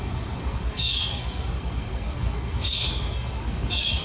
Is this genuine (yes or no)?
no